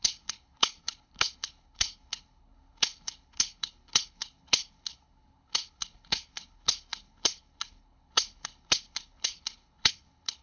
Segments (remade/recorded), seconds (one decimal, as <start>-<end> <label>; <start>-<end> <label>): 0.0-10.4 remade